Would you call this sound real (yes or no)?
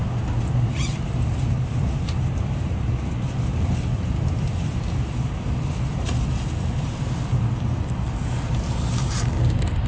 yes